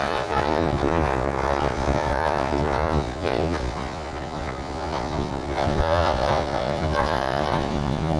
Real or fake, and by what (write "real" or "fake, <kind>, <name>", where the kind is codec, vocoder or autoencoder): fake, vocoder, Vocos